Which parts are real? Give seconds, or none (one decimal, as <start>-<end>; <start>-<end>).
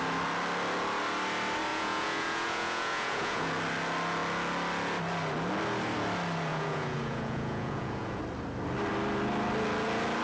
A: 0.0-1.7; 3.5-6.5; 8.2-10.2